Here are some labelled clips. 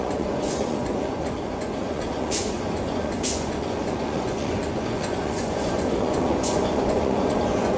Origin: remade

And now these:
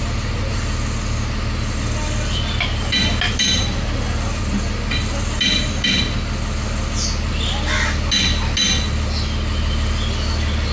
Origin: recorded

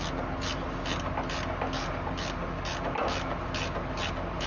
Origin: recorded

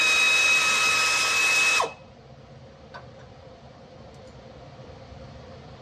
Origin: remade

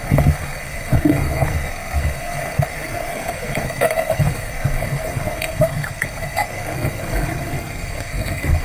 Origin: remade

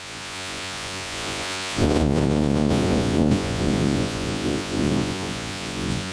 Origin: remade